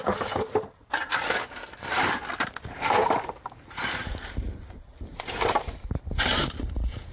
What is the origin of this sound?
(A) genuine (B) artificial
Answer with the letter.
B